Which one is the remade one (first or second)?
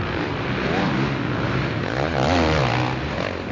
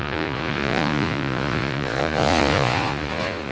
second